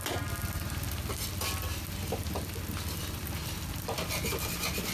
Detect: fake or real real